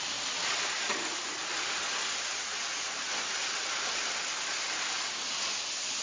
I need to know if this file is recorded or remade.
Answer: recorded